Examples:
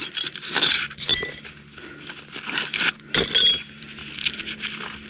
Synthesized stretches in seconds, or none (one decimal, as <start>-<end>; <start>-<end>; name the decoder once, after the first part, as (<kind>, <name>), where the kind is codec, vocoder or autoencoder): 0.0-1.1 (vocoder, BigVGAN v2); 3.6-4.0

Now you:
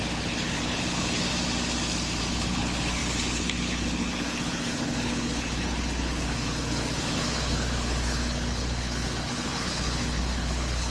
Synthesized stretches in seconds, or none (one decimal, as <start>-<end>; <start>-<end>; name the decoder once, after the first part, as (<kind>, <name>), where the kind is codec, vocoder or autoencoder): 0.0-1.3 (codec, HILCodec); 2.2-10.9

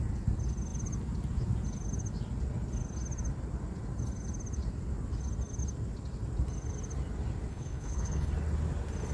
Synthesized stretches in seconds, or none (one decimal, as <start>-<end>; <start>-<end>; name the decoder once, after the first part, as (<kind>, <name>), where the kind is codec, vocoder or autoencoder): 7.5-8.3 (codec, HILCodec)

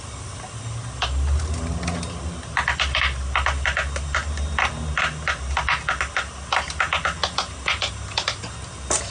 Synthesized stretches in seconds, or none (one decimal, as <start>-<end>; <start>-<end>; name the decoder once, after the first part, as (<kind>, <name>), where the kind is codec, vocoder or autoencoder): none